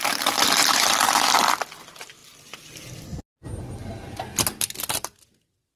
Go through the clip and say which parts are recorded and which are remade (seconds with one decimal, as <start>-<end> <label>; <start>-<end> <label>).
0.0-5.8 recorded